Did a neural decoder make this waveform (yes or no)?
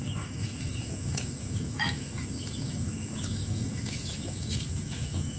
yes